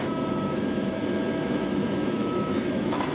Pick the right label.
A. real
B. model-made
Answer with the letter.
B